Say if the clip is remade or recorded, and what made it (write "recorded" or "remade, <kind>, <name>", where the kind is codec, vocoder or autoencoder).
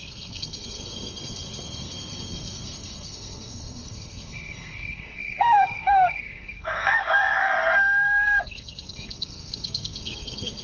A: remade, codec, SNAC